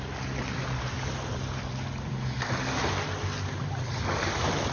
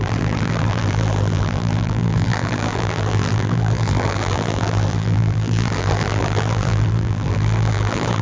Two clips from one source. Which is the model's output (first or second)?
second